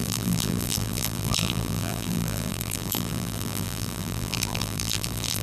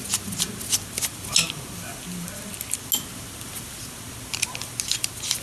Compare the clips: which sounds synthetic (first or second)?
first